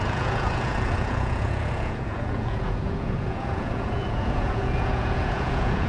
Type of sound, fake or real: fake